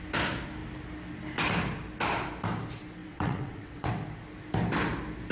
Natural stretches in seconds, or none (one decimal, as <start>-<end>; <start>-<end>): 0.0-3.0; 3.9-5.3